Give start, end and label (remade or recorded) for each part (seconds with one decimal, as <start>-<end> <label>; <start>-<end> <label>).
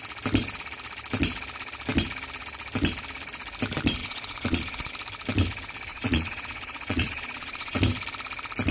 0.0-4.0 recorded; 4.0-4.9 remade; 4.9-5.9 recorded; 5.9-7.8 remade; 7.8-8.7 recorded